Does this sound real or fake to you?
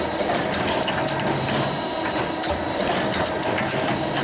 real